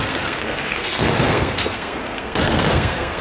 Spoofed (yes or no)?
yes